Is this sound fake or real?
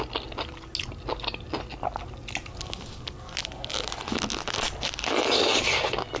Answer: real